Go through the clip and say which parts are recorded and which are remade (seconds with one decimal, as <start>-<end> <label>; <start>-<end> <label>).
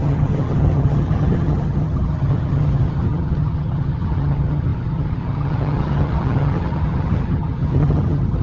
0.0-8.4 remade